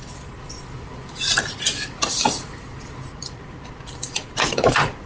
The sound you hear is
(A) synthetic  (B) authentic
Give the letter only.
A